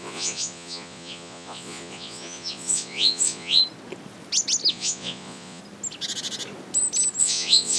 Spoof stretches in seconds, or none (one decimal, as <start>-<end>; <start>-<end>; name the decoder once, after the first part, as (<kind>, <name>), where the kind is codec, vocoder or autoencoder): 0.0-3.6 (vocoder, Vocos); 4.7-5.6; 7.2-7.8